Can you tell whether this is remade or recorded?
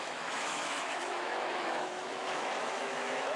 remade